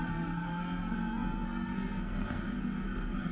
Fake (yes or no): yes